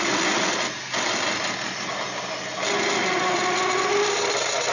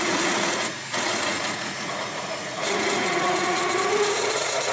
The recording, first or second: first